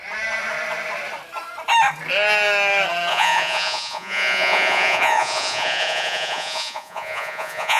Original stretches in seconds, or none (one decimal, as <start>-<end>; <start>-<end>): 0.0-3.1